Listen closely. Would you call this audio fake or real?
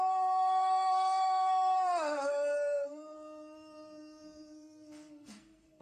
fake